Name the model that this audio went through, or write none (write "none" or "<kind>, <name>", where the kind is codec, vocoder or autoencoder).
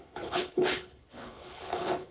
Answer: codec, HILCodec